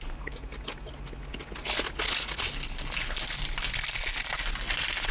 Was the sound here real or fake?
real